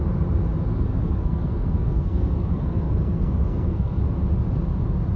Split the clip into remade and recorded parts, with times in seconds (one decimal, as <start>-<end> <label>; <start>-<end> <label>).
0.0-0.9 recorded; 0.9-4.0 remade; 4.0-5.2 recorded

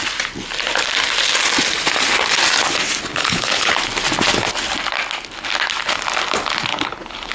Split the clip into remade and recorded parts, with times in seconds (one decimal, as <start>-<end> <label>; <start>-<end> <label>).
0.0-3.1 recorded; 3.1-3.7 remade; 3.7-6.7 recorded; 6.7-7.3 remade

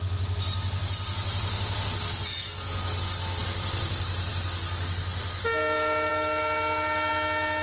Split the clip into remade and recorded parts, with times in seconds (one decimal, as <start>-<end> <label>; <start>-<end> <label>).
0.0-7.6 recorded

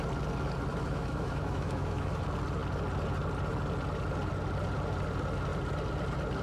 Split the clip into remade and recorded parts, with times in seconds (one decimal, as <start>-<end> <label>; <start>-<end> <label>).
0.0-0.7 recorded; 0.7-2.2 remade; 2.2-6.4 recorded

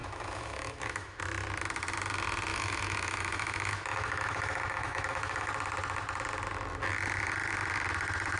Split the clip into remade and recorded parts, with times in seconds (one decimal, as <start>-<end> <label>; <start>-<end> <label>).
0.0-1.2 remade; 1.2-2.5 recorded; 2.5-5.5 remade; 5.5-8.4 recorded